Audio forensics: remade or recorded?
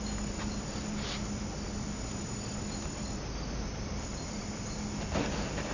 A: recorded